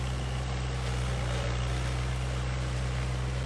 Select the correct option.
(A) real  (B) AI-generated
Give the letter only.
A